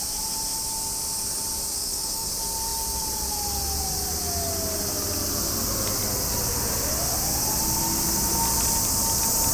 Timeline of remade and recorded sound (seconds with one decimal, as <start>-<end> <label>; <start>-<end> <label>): 0.0-1.7 recorded; 1.7-2.3 remade; 2.3-9.5 recorded